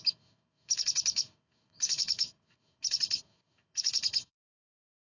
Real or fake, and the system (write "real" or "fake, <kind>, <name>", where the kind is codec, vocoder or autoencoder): fake, autoencoder, DAC-VAE